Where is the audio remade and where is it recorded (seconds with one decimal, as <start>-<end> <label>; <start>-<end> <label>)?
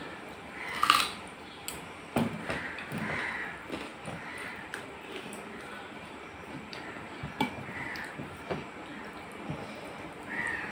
0.0-3.9 recorded; 3.9-8.1 remade; 8.1-10.7 recorded